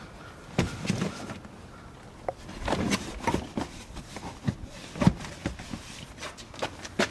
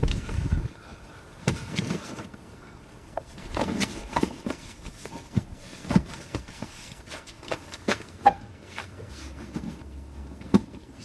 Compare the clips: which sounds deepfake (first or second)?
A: second